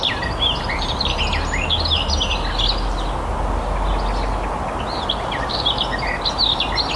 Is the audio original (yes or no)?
yes